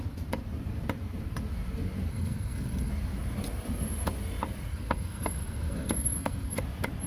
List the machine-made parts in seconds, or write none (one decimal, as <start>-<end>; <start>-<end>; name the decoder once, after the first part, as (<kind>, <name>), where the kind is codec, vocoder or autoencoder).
2.1-2.9 (codec, SNAC); 4.7-6.6